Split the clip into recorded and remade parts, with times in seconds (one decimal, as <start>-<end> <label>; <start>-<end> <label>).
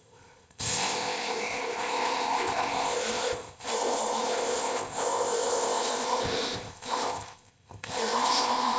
0.0-8.8 remade